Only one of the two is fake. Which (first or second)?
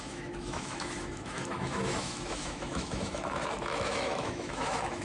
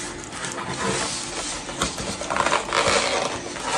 first